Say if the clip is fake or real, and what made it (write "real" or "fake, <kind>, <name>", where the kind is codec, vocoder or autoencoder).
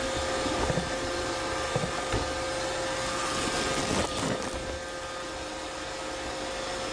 real